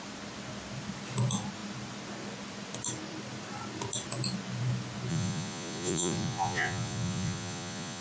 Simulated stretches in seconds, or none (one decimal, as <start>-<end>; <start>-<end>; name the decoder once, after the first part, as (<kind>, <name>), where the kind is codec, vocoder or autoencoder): 5.1-8.0 (vocoder, Vocos)